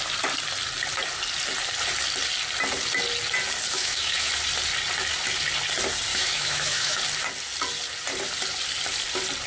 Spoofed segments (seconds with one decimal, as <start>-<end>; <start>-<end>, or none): 3.7-4.3; 6.1-7.0